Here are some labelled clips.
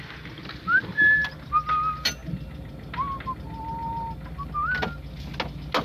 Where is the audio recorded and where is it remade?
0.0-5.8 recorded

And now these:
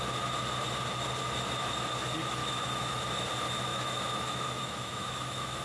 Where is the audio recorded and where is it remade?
0.0-2.4 recorded; 2.4-3.0 remade; 3.0-3.7 recorded; 3.7-5.6 remade